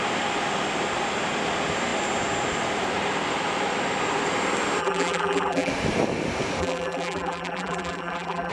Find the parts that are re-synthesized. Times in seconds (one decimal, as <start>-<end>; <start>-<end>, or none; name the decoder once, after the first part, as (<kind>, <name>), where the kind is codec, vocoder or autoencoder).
4.8-5.7 (vocoder, BigVGAN v2); 6.6-8.5